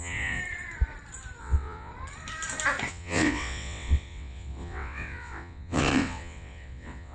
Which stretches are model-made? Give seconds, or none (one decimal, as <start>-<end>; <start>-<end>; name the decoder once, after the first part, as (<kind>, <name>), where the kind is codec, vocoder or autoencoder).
0.0-0.4 (vocoder, WaveNeXt); 1.4-1.9; 2.9-7.1